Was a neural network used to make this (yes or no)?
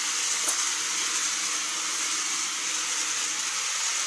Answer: no